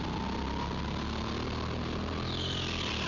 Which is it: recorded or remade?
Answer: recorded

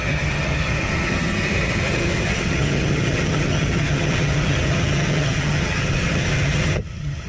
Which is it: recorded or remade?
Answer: remade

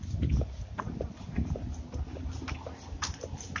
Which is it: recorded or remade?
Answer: recorded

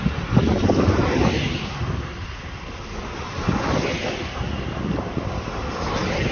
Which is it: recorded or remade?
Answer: recorded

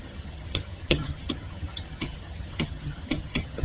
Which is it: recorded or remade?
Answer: remade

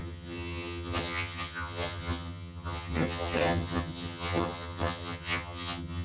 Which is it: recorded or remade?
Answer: remade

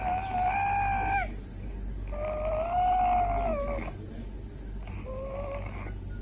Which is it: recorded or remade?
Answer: recorded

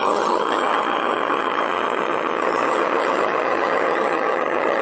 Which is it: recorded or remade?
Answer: remade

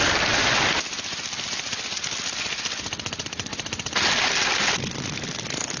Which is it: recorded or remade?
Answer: recorded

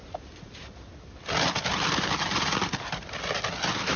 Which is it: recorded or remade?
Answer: recorded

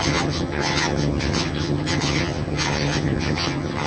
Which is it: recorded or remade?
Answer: remade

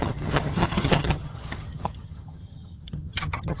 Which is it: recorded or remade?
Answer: remade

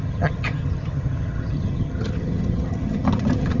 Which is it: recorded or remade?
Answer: remade